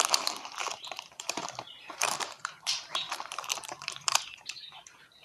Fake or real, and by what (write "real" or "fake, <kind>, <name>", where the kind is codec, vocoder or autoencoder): fake, vocoder, BigVGAN v2